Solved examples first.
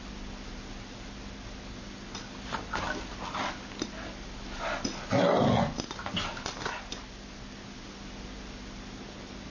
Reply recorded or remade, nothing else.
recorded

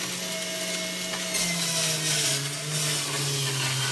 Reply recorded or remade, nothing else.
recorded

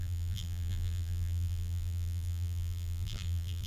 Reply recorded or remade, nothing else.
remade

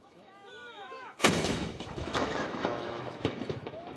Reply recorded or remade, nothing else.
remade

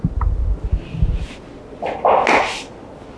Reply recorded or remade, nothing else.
recorded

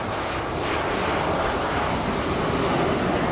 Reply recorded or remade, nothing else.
recorded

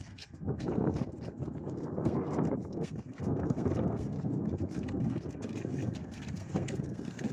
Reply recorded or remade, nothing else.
remade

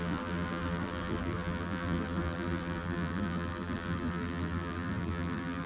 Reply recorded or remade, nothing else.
remade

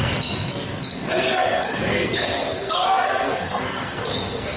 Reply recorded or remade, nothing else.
remade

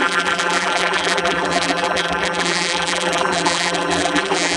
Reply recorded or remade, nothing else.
remade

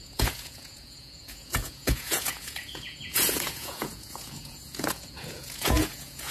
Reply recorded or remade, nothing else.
remade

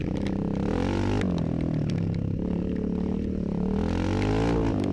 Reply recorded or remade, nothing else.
recorded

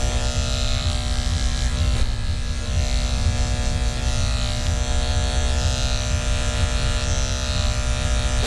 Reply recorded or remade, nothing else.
recorded